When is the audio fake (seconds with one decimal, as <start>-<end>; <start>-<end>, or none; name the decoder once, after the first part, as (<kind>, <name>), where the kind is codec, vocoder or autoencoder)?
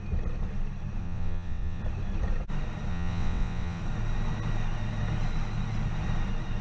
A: 1.0-1.8 (vocoder, WaveNeXt); 2.9-3.8